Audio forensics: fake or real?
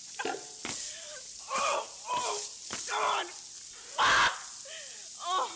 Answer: real